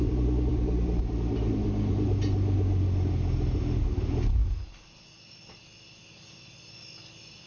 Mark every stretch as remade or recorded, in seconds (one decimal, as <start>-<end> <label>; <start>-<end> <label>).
0.0-7.5 recorded